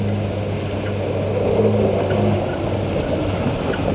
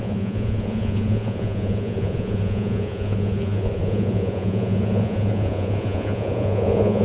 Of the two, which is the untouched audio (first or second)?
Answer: first